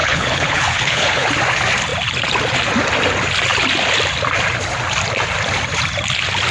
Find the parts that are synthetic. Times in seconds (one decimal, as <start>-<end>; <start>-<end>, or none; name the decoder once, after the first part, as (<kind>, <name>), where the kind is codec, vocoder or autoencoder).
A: 0.0-1.3 (codec, HILCodec)